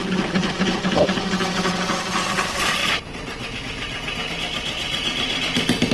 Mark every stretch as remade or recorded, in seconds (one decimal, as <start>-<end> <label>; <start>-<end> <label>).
0.0-5.9 recorded